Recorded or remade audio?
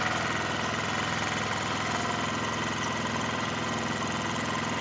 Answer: recorded